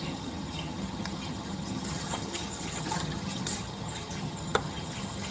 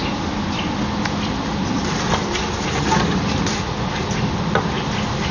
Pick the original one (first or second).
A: second